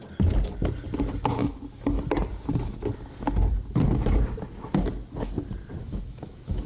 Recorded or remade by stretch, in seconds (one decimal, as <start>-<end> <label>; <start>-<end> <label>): 0.0-5.8 recorded; 5.8-6.7 remade